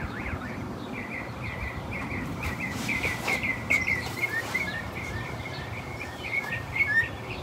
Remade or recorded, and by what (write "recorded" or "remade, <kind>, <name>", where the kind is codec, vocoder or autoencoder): remade, vocoder, BigVGAN v2